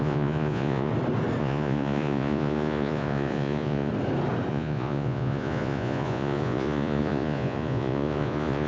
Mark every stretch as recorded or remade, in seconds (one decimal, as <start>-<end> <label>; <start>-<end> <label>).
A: 0.0-0.9 remade; 0.9-1.4 recorded; 1.4-3.9 remade; 3.9-4.5 recorded; 4.5-8.7 remade